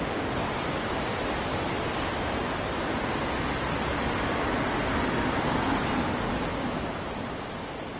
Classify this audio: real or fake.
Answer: real